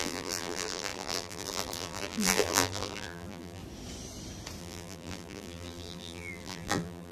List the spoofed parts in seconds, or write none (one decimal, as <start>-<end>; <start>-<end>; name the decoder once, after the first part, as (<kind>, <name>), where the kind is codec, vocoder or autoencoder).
0.0-3.6 (vocoder, BigVGAN v2); 4.6-7.1